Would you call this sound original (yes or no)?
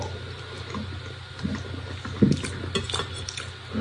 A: yes